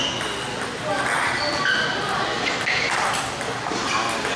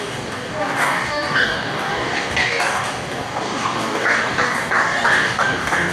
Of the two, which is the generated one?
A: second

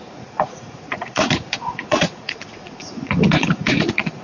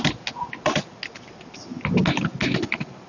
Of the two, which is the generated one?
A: first